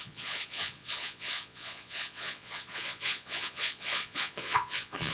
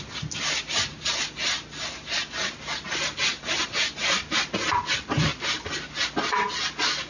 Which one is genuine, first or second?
second